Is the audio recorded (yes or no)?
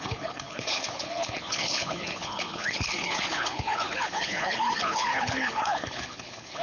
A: no